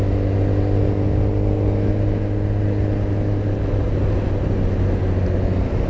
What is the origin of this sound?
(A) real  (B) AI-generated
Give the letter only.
A